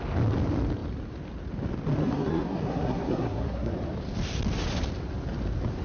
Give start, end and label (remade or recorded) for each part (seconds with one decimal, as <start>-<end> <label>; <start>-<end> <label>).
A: 0.0-2.0 recorded; 2.0-3.7 remade; 3.7-5.8 recorded